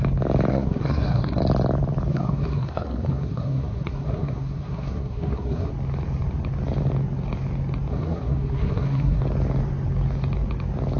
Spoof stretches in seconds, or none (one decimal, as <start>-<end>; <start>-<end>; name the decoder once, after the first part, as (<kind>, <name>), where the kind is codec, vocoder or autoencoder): 0.5-1.4 (codec, SNAC); 2.1-5.7; 7.9-9.2